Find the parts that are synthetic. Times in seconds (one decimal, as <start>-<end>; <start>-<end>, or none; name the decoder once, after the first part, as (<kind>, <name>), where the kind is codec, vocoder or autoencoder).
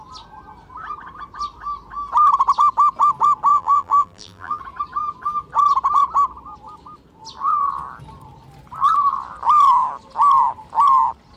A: 3.5-4.6 (vocoder, BigVGAN v2)